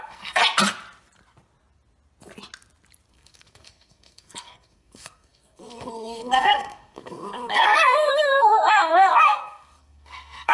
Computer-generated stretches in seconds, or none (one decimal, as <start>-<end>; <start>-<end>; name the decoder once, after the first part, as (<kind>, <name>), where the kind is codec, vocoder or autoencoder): 0.0-0.4 (codec, SNAC); 3.1-10.5